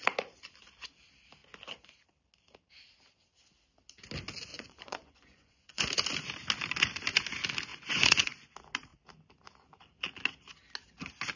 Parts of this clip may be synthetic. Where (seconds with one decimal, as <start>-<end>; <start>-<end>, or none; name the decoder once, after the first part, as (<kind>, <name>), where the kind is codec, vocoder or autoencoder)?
4.5-5.9 (vocoder, Vocos); 7.7-8.5

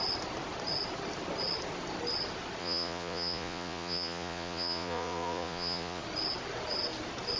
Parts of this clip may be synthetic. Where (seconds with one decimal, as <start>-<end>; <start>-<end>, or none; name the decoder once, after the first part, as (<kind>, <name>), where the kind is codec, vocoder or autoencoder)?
2.6-6.0 (vocoder, Vocos)

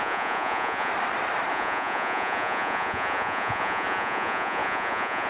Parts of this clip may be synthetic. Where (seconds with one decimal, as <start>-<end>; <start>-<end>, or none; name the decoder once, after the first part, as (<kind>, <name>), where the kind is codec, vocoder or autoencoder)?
0.0-0.9 (vocoder, Vocos); 1.5-5.3

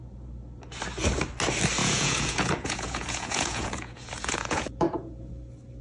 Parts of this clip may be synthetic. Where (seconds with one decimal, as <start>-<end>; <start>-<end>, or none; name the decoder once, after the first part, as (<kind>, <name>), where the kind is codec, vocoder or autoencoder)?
1.8-5.3 (vocoder, Vocos)

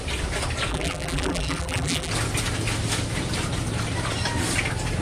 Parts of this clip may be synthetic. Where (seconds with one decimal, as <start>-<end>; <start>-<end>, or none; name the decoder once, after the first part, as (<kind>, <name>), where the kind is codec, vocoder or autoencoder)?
0.7-2.1 (vocoder, BigVGAN v2)

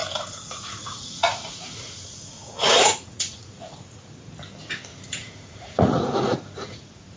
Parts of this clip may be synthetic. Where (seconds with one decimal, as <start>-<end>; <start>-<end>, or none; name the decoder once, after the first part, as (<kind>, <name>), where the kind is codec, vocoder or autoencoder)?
0.0-4.3 (vocoder, Vocos); 4.9-7.2

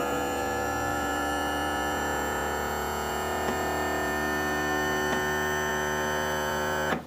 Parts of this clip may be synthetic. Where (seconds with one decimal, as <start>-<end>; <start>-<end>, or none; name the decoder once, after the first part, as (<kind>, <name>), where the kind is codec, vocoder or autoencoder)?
0.0-7.1 (vocoder, Vocos)